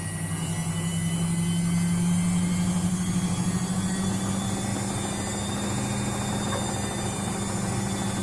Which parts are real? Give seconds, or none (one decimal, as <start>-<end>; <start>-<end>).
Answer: 0.0-8.2